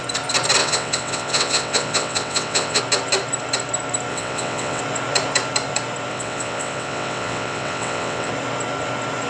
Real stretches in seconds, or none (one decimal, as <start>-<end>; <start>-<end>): 0.0-0.6; 2.8-4.1; 4.8-6.1; 8.3-9.3